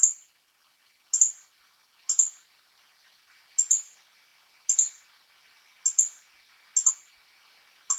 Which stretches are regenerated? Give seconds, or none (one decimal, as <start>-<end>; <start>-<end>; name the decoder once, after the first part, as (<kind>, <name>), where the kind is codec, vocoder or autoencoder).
none